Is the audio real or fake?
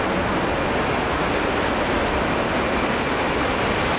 real